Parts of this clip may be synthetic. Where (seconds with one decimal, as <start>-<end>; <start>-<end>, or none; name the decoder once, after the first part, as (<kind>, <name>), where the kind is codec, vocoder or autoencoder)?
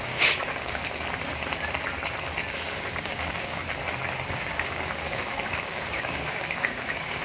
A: 0.0-0.8 (codec, DAC); 2.5-3.6; 4.3-7.2